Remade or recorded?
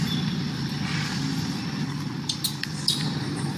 recorded